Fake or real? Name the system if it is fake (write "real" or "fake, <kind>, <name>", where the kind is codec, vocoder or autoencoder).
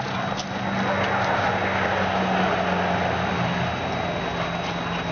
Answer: real